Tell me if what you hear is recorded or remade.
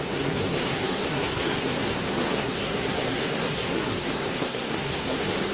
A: remade